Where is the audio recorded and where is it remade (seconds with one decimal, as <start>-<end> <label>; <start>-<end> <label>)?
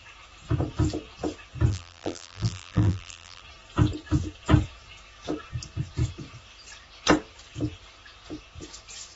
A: 0.0-1.7 recorded; 1.7-3.4 remade; 3.4-9.2 recorded